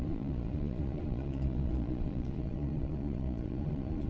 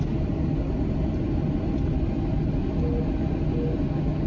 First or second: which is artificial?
first